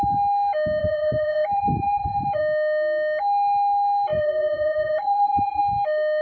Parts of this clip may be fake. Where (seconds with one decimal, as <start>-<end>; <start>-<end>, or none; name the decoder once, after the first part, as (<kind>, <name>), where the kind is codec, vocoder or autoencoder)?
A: 0.8-2.4 (vocoder, Vocos); 4.1-5.6